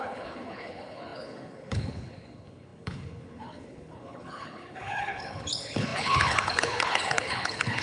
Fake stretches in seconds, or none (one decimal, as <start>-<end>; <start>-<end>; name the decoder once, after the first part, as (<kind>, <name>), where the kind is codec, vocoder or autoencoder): 0.0-7.8 (codec, HILCodec)